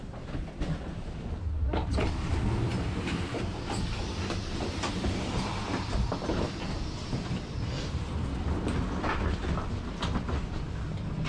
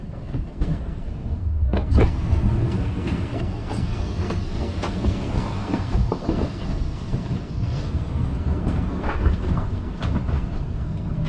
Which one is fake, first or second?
second